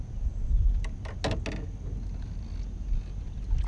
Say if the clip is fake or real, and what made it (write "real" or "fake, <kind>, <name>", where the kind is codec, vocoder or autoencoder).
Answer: real